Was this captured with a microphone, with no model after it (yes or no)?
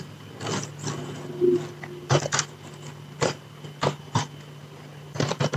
yes